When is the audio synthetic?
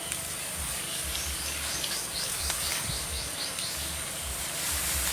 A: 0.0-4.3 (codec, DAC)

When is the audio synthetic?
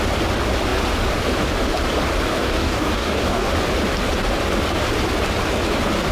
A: 2.3-3.5 (codec, DAC)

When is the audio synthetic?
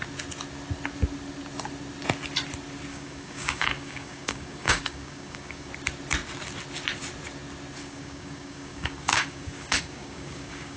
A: 2.9-5.7 (codec, DAC); 7.8-10.8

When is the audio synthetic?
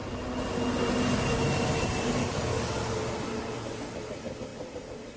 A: 2.2-3.0 (codec, DAC)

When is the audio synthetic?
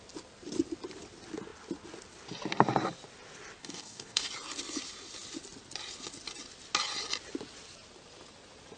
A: 3.6-4.3 (codec, DAC)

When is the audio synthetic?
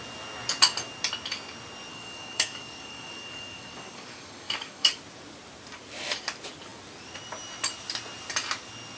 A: 1.9-5.0 (codec, DAC)